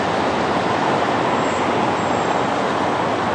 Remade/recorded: recorded